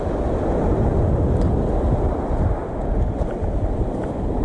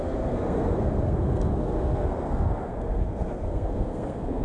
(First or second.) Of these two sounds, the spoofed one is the second